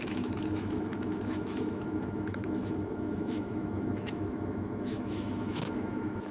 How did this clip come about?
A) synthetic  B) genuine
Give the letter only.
A